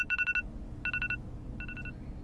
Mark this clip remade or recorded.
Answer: recorded